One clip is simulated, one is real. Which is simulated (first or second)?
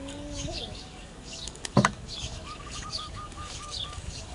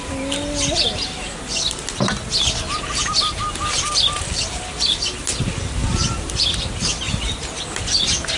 first